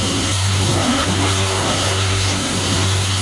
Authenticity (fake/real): fake